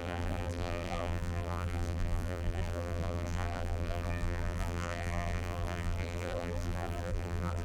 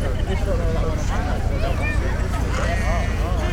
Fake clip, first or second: first